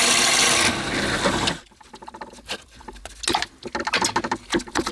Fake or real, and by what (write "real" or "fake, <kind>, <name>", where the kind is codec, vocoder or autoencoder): real